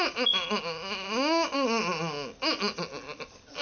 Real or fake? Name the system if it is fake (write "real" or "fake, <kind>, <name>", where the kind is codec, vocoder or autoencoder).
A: real